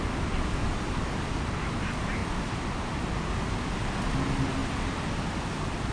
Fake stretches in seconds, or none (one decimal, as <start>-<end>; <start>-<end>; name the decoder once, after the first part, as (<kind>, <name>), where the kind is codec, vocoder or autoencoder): none